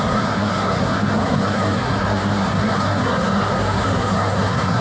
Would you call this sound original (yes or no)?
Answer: no